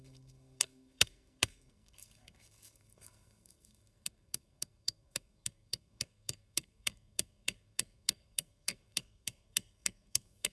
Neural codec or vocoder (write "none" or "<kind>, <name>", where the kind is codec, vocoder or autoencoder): codec, SNAC